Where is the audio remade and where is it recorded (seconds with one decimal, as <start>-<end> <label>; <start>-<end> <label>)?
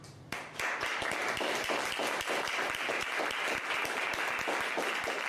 0.0-5.3 recorded